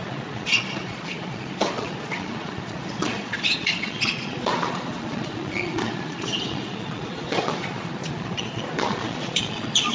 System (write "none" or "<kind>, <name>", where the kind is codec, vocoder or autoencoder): vocoder, Vocos